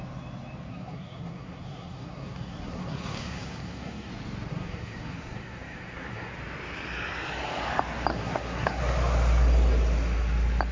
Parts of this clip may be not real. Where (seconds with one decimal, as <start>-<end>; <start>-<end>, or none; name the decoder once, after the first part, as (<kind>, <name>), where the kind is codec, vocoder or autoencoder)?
0.7-4.1 (codec, SNAC); 4.5-6.3; 8.1-8.8